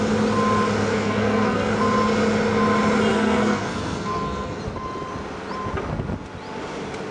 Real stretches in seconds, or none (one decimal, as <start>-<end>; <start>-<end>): 0.0-0.9; 1.7-3.1; 4.6-7.1